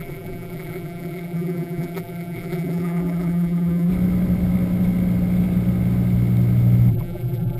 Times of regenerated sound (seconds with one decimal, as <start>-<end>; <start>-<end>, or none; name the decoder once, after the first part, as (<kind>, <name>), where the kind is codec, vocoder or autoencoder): 0.0-3.9 (vocoder, BigVGAN v2); 6.9-7.6